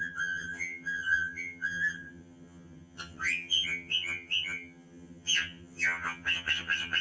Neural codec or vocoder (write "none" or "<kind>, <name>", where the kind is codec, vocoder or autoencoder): vocoder, HiFi-GAN